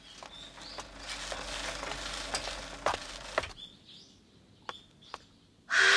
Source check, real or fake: real